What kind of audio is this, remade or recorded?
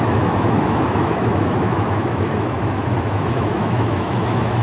remade